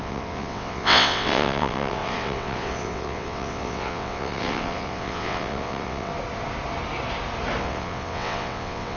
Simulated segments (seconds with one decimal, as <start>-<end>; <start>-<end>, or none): 0.0-6.1; 7.6-9.0

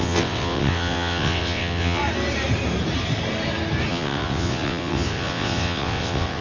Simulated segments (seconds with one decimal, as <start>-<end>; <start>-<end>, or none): 0.0-2.0; 3.9-6.4